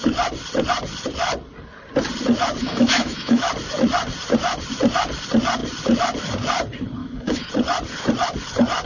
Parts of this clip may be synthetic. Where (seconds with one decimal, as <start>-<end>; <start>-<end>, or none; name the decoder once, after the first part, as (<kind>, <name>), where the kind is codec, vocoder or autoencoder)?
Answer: 2.6-3.5 (autoencoder, DAC-VAE); 7.0-7.5